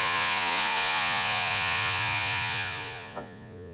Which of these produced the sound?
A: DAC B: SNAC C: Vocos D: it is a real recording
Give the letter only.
C